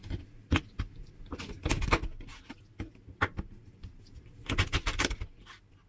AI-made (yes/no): no